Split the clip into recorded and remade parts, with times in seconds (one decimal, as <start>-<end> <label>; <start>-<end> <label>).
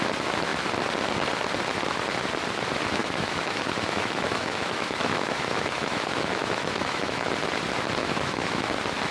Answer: 0.0-3.0 recorded; 3.0-7.3 remade; 7.3-8.0 recorded; 8.0-8.7 remade; 8.7-9.1 recorded